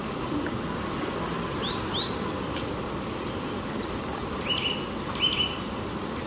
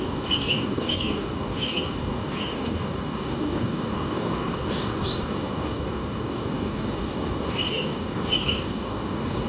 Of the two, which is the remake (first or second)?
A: second